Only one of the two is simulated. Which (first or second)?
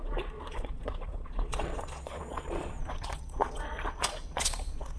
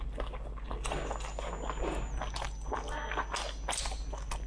first